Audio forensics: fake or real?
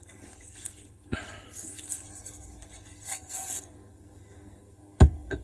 fake